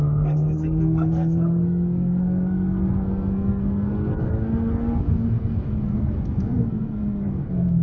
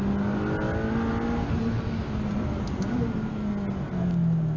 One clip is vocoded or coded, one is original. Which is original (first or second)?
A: second